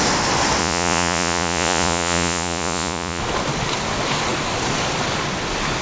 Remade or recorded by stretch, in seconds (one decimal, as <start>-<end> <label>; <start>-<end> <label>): 0.0-0.6 recorded; 0.6-3.2 remade; 3.2-5.8 recorded